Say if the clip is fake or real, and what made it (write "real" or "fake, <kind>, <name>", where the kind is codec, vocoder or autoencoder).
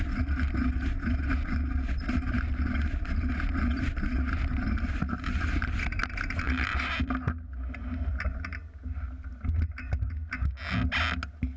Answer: real